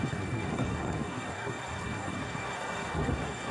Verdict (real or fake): fake